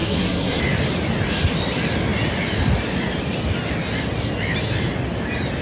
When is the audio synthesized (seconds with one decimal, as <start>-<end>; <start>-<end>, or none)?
0.0-0.6